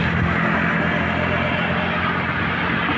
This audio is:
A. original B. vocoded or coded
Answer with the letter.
A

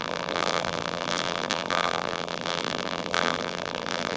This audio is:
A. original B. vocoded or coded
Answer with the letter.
B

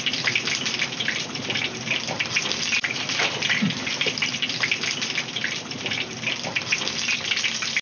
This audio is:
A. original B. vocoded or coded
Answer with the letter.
B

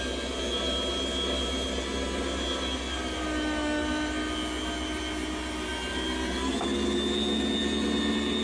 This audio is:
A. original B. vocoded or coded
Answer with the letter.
A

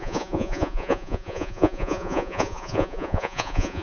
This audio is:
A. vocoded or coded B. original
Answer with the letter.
A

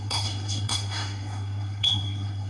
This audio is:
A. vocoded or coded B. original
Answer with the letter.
A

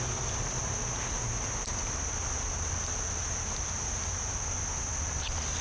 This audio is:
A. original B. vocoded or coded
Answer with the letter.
A